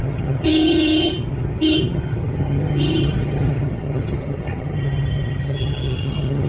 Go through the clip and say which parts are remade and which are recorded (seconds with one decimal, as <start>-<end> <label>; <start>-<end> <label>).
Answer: 0.0-6.5 remade